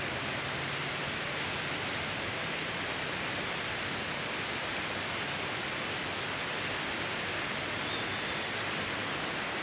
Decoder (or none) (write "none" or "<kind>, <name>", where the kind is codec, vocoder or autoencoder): none